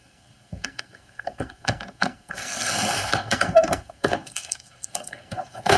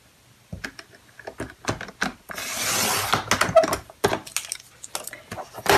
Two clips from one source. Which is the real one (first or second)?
second